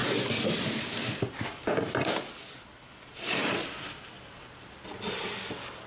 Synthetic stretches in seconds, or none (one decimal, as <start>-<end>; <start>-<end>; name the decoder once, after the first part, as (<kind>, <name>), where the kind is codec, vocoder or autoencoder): none